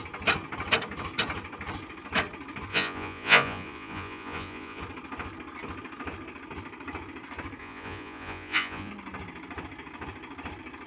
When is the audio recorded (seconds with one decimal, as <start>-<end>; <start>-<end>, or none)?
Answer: 0.0-2.7; 4.8-7.6; 8.9-10.9